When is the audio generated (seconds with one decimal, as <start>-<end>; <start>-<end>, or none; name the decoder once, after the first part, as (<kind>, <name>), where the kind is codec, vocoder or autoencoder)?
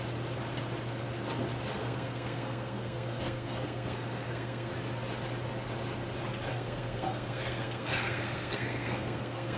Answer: 1.8-4.7 (codec, SNAC); 6.5-9.6